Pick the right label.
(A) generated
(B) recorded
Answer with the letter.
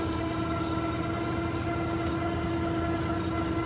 B